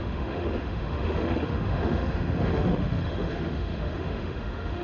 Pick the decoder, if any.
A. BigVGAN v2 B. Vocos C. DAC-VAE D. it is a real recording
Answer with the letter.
C